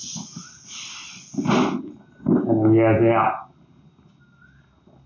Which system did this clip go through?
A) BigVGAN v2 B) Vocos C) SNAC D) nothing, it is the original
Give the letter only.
D